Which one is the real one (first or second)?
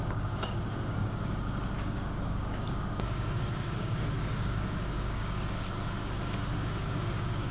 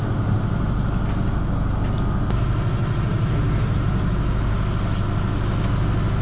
second